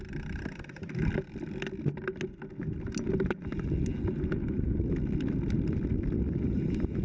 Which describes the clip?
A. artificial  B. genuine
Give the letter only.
B